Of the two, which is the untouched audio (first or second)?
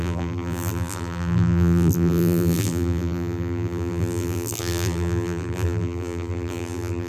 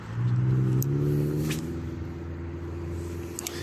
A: second